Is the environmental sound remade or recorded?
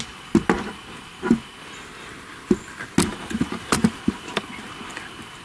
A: recorded